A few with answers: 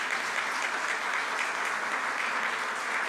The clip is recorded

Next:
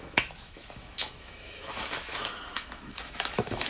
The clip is remade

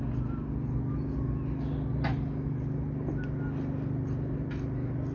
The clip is recorded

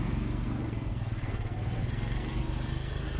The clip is remade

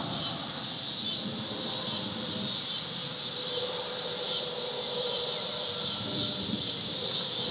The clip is recorded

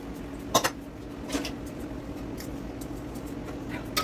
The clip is recorded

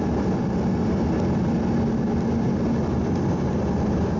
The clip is recorded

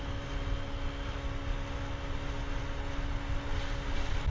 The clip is recorded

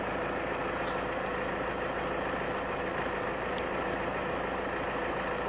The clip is recorded